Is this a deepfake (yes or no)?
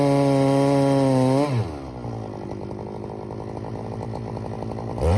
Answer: no